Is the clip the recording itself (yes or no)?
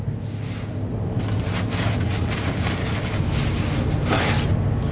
yes